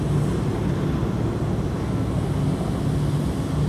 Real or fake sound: real